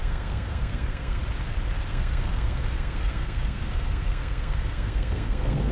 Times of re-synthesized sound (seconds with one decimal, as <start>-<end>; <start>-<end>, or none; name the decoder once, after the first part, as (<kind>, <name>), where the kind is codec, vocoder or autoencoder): 0.0-1.2 (codec, SNAC); 1.9-5.7